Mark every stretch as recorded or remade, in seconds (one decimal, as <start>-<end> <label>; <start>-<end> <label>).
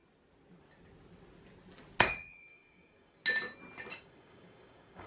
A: 0.0-2.3 recorded; 2.3-3.2 remade; 3.2-3.9 recorded; 3.9-5.1 remade